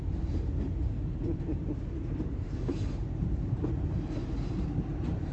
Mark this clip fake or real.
fake